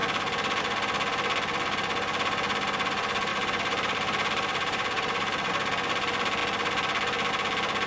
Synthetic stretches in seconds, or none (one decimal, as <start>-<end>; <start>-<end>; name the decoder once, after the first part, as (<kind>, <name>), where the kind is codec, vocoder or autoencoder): 3.3-5.5 (vocoder, BigVGAN v2)